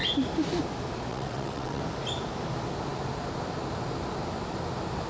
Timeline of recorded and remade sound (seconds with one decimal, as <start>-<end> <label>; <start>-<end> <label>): 0.0-1.1 recorded; 1.1-1.8 remade; 1.8-5.1 recorded